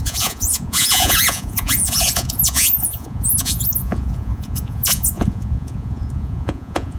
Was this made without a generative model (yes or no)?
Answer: no